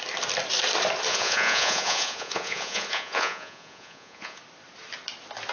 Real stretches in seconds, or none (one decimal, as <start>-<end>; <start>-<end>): 0.0-1.1; 4.4-5.5